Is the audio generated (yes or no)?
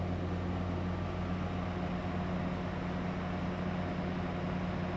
no